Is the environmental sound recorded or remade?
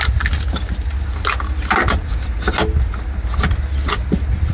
recorded